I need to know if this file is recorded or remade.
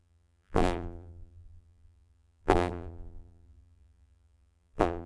remade